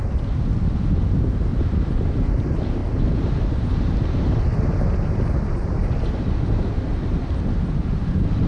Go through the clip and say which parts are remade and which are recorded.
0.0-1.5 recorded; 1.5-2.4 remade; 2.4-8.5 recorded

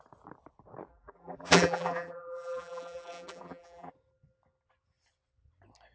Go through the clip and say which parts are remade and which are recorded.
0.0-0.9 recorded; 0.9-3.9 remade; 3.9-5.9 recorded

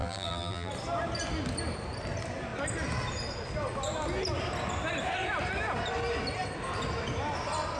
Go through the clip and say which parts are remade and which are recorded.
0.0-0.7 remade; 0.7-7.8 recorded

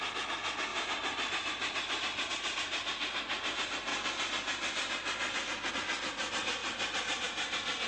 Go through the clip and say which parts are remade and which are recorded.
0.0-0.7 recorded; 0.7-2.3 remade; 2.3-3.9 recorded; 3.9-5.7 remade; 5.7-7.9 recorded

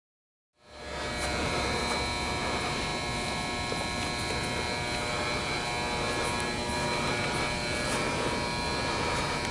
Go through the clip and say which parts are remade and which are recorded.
0.0-9.5 recorded

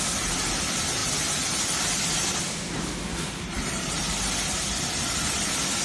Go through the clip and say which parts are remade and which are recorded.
0.0-3.1 recorded; 3.1-4.0 remade; 4.0-5.8 recorded